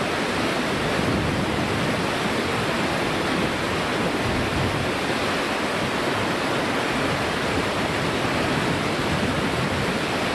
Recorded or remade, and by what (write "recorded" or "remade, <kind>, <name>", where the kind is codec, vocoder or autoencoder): recorded